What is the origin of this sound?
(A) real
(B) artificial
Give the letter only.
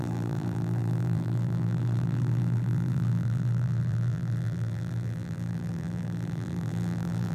B